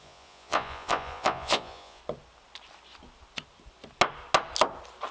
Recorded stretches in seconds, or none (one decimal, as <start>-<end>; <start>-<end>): 2.0-5.1